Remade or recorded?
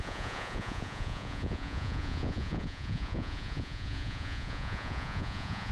remade